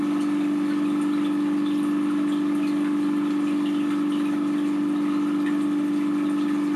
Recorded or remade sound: recorded